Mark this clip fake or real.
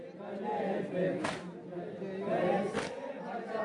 real